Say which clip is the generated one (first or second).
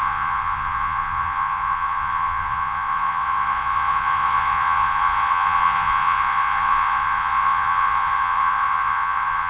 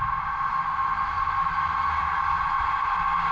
first